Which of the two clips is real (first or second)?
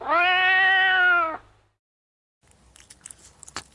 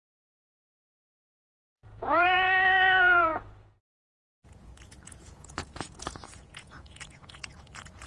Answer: first